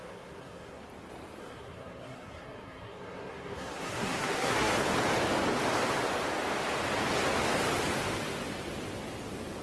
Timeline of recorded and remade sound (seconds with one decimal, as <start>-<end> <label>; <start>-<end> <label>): 0.0-0.8 remade; 0.8-1.4 recorded; 1.4-4.7 remade; 4.7-9.6 recorded